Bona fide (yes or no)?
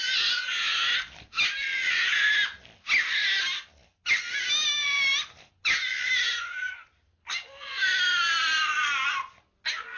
yes